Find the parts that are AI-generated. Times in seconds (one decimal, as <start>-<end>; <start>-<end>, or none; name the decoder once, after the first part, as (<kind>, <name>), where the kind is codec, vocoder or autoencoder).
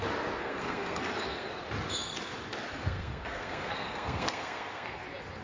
0.4-1.5 (codec, SNAC); 2.7-5.0